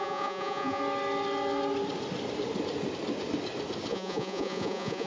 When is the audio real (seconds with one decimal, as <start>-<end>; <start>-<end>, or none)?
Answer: 0.8-3.9